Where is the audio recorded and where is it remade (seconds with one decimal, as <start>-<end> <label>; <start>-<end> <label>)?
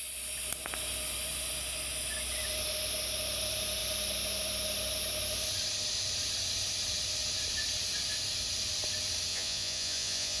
0.0-9.3 recorded; 9.3-10.4 remade